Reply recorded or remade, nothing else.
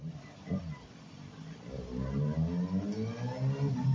recorded